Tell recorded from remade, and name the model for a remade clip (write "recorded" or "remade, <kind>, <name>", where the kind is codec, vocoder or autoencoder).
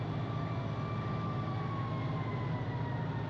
recorded